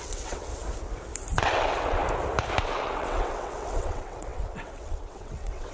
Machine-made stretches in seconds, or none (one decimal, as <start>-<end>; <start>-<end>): 0.0-0.5; 1.4-2.0; 2.6-5.7

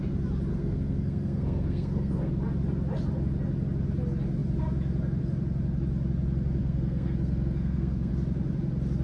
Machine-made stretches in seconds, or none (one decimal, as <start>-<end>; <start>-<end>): 0.5-2.3; 6.6-8.1

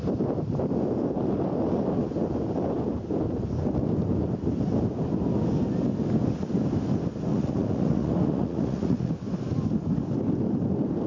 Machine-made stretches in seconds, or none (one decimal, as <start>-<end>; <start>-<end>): 7.3-9.1

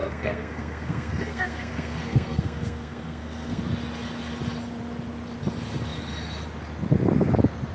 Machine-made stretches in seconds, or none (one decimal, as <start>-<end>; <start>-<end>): 0.0-3.6

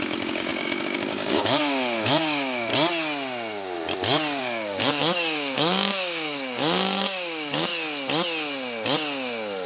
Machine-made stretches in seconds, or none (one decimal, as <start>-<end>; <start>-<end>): 0.0-2.7; 4.4-7.7

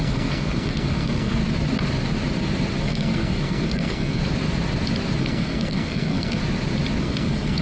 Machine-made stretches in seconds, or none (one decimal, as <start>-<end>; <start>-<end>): 0.0-1.4; 2.8-4.2; 5.2-6.4; 7.0-7.6

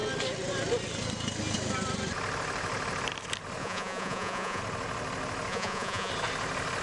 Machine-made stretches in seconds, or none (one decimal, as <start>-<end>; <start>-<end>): 3.6-4.6; 5.5-6.1